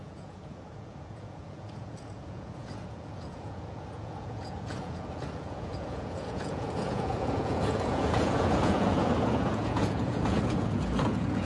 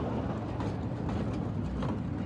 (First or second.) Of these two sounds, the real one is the second